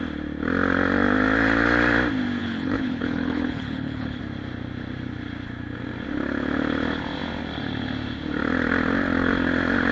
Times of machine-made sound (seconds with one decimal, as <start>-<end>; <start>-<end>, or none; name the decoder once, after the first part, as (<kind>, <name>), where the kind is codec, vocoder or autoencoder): 2.4-4.2 (codec, HILCodec)